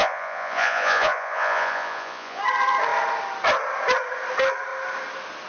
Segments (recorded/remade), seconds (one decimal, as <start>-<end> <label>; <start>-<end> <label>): 0.0-2.4 remade; 2.4-5.5 recorded